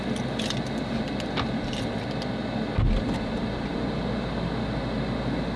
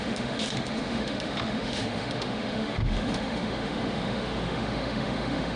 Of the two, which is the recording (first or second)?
first